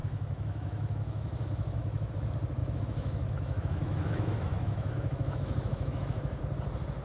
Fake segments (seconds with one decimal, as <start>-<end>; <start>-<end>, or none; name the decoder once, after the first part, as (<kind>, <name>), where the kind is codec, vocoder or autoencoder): 0.0-2.1 (autoencoder, DAC-VAE); 2.6-6.4